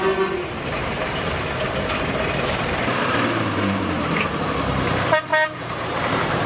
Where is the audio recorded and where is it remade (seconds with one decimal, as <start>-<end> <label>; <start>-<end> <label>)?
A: 0.0-6.5 remade